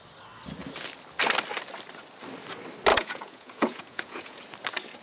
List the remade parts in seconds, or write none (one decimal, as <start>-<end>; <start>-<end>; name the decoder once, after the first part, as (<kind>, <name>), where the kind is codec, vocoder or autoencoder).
2.9-4.4 (vocoder, Vocos)